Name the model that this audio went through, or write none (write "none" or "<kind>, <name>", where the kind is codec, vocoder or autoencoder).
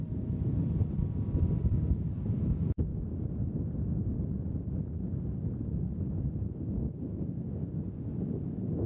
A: none